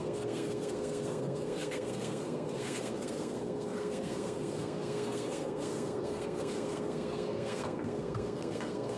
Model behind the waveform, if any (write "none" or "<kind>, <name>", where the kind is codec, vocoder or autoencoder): codec, SNAC